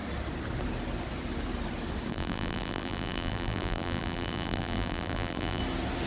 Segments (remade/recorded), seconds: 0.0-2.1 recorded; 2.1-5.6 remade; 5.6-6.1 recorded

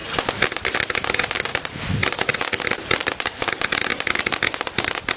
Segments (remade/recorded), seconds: 0.0-1.5 recorded; 1.5-2.3 remade; 2.3-3.0 recorded; 3.0-3.5 remade; 3.5-3.9 recorded; 3.9-5.2 remade